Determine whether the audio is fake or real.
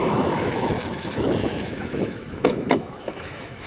fake